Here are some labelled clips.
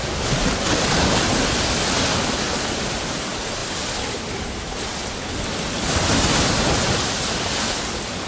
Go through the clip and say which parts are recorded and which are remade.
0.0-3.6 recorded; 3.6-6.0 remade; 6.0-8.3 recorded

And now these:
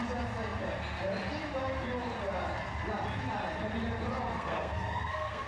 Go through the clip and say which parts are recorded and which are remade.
0.0-4.3 recorded; 4.3-5.5 remade